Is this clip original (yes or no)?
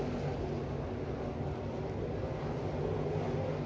yes